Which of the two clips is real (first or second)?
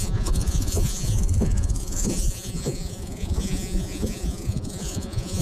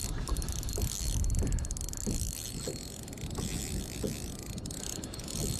second